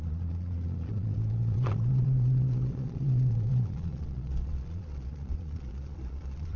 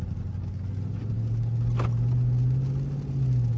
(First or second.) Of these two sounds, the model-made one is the first